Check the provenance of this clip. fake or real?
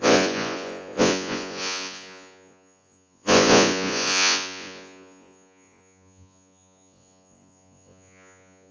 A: fake